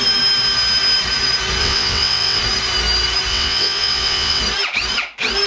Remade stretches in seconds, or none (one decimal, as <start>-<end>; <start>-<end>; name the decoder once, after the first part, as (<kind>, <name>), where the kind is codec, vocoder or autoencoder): 1.6-2.4 (vocoder, WaveNeXt); 3.3-4.4